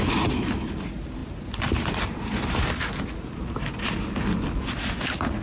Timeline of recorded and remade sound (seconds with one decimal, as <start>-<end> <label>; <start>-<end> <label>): 0.0-5.4 recorded